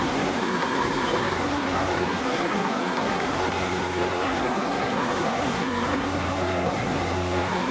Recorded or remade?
remade